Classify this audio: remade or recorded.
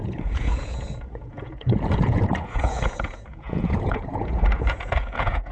remade